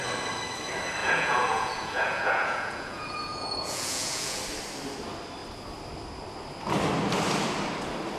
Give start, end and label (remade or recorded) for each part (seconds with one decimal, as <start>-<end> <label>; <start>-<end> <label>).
0.0-1.0 recorded; 1.0-4.4 remade; 4.4-8.2 recorded